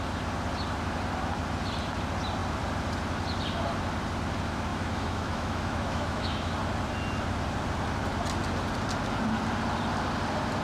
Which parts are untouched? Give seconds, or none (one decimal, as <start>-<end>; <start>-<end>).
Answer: 0.0-4.7; 6.5-10.6